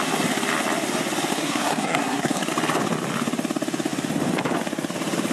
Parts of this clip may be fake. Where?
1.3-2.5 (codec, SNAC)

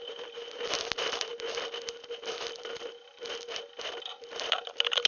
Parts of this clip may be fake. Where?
none

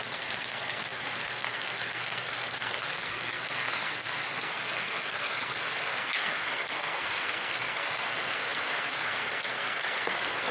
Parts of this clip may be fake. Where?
0.0-10.5 (codec, SNAC)